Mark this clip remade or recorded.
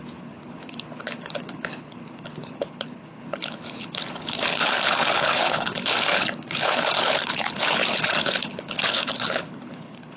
remade